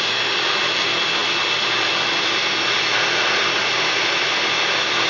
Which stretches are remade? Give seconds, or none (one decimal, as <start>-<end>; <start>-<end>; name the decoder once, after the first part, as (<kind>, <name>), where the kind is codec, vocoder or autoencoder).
none